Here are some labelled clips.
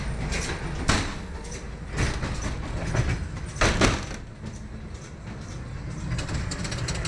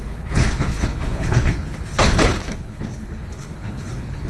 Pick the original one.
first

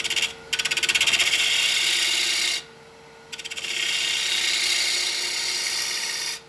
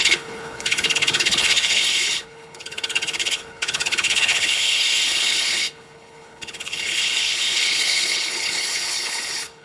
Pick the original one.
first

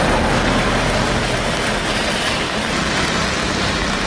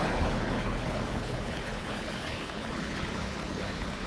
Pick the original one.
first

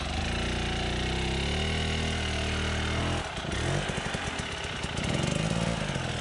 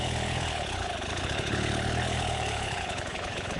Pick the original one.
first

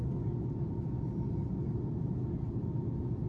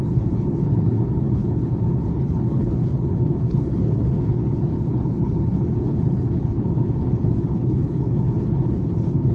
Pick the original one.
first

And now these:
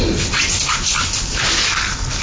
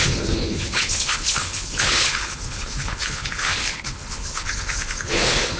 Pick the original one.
first